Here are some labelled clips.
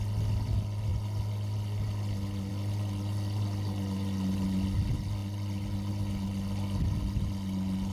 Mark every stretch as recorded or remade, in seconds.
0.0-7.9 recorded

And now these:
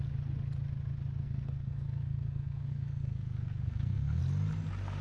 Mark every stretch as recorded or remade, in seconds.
0.0-1.2 recorded; 1.2-4.2 remade; 4.2-5.0 recorded

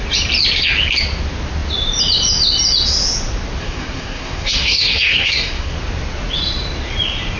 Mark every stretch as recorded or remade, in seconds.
0.0-3.6 recorded; 3.6-5.7 remade; 5.7-7.4 recorded

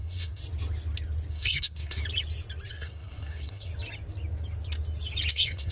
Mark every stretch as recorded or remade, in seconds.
0.0-0.4 remade; 0.4-1.3 recorded; 1.3-2.0 remade; 2.0-2.7 recorded; 2.7-3.7 remade; 3.7-5.3 recorded; 5.3-5.7 remade

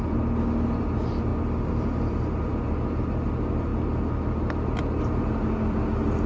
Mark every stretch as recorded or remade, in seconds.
0.0-6.3 recorded

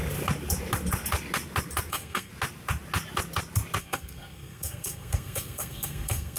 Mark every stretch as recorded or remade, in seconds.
0.0-1.9 recorded; 1.9-2.3 remade; 2.3-3.8 recorded; 3.8-6.4 remade

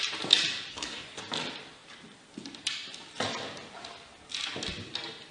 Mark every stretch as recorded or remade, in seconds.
0.0-0.7 recorded; 0.7-1.2 remade; 1.2-5.3 recorded